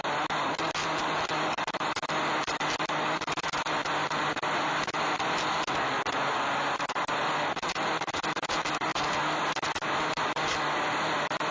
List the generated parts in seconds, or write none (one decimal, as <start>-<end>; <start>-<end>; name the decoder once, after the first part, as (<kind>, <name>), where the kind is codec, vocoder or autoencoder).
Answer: none